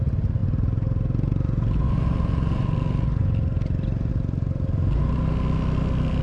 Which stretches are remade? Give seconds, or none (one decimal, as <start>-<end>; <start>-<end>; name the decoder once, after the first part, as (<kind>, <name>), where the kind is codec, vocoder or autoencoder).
none